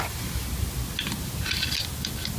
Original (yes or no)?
yes